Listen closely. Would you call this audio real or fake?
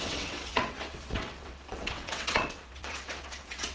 fake